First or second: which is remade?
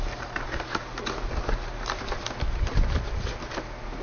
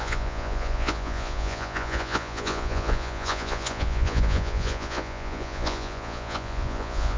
second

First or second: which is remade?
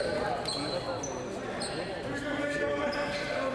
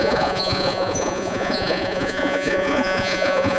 second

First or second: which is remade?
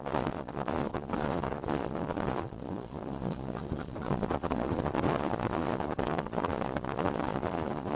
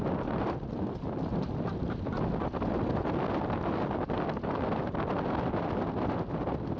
first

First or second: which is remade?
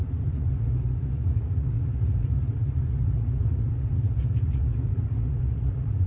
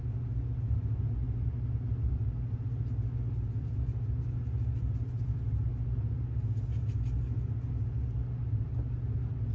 first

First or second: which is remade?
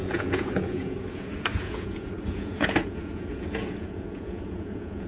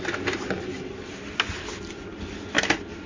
first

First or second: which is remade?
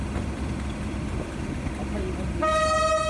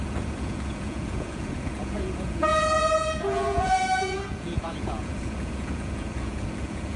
second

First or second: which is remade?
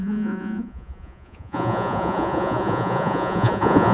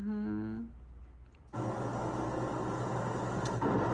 first